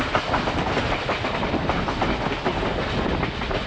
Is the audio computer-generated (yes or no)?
no